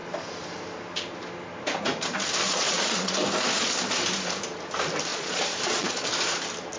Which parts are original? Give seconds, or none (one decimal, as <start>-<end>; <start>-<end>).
0.0-2.4; 3.1-5.1; 6.1-6.8